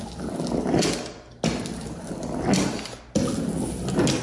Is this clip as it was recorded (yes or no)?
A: yes